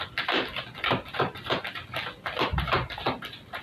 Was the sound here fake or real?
real